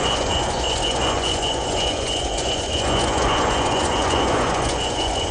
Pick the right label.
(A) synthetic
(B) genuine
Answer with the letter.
A